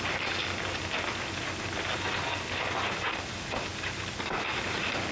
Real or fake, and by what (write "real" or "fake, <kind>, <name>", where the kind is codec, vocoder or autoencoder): real